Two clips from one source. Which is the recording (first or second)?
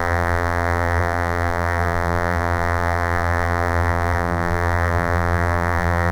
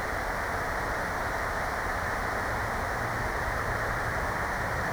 second